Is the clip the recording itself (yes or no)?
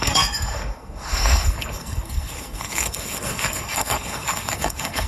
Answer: no